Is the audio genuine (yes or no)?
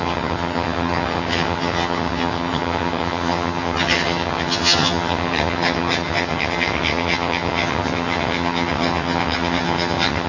no